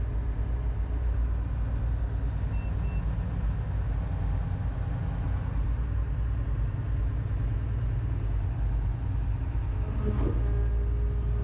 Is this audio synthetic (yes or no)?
no